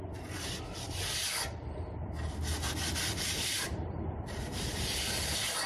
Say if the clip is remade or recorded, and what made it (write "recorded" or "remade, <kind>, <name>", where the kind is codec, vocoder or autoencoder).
remade, vocoder, BigVGAN v2